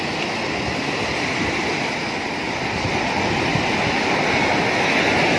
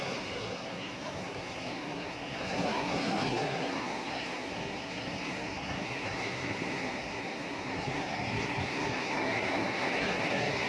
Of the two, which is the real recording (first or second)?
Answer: first